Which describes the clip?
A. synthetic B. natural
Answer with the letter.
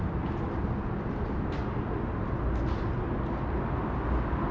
B